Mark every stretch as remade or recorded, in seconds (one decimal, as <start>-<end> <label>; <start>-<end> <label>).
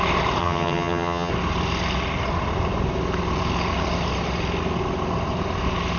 0.0-0.4 recorded; 0.4-1.3 remade; 1.3-6.0 recorded